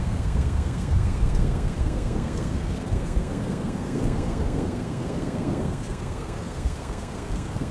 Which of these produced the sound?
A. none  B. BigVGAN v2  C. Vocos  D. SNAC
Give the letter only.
D